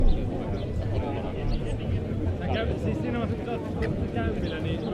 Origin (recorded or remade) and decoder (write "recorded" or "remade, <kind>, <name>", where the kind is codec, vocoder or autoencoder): recorded